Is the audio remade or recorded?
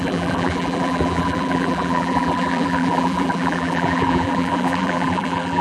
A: remade